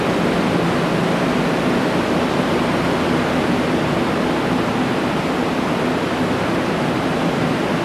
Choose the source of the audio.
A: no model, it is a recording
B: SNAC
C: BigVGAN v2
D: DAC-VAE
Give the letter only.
A